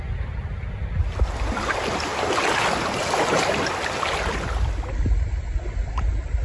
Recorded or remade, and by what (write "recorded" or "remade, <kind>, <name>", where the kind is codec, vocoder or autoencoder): recorded